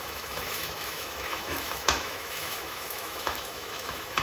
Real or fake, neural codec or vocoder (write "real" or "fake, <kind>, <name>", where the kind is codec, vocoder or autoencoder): fake, autoencoder, DAC-VAE